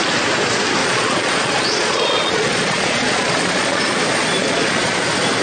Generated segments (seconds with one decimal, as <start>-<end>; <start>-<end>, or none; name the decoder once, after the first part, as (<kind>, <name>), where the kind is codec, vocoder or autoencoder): 0.8-3.8 (vocoder, Vocos); 4.4-5.0